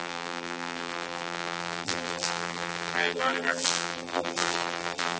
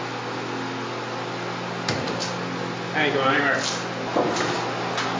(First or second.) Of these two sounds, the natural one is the second